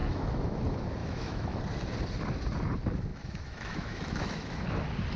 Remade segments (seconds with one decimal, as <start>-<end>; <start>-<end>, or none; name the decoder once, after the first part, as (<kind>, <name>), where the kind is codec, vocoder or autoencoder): 0.0-0.6 (autoencoder, DAC-VAE); 1.0-1.6; 3.1-4.5

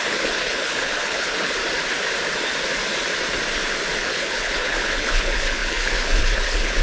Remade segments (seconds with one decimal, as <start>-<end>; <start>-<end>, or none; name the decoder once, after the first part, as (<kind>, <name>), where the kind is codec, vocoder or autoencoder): 0.0-1.6 (codec, HILCodec); 4.0-6.8